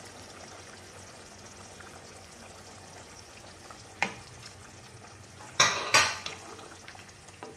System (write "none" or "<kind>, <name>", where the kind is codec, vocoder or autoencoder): vocoder, Vocos